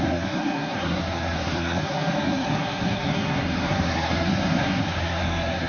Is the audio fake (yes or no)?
yes